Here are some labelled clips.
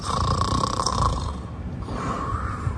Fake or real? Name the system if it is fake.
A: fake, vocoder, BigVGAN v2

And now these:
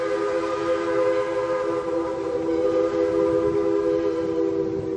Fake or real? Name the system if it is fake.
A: real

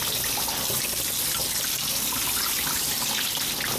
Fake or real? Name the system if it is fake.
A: fake, vocoder, BigVGAN v2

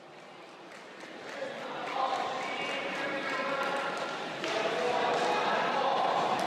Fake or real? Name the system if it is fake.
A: real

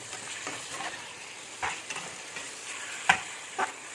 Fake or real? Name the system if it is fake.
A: fake, vocoder, BigVGAN v2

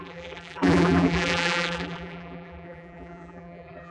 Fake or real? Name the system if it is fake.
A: fake, vocoder, BigVGAN v2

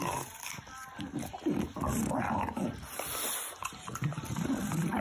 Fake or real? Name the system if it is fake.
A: fake, vocoder, BigVGAN v2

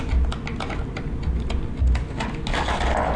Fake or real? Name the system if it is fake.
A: real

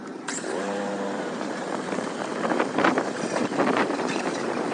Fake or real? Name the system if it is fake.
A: fake, vocoder, BigVGAN v2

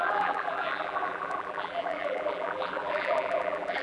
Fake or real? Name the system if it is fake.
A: fake, vocoder, BigVGAN v2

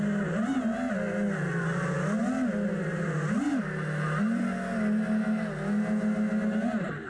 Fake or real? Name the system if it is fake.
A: real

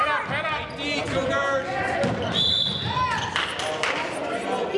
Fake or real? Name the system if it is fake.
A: real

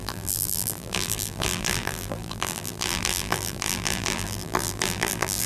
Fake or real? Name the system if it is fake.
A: fake, vocoder, BigVGAN v2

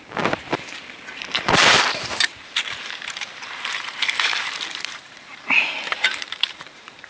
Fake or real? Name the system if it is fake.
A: fake, vocoder, BigVGAN v2